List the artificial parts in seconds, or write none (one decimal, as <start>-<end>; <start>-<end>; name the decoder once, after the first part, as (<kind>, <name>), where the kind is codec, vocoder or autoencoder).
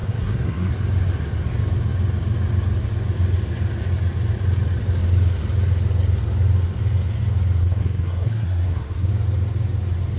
0.0-0.7 (codec, SNAC); 7.6-9.1